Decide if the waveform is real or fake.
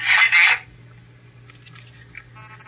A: real